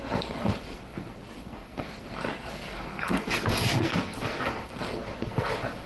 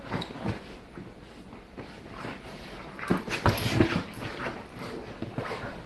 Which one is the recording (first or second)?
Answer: second